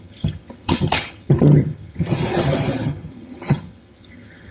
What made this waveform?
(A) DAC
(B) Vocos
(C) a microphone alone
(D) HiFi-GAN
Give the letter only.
D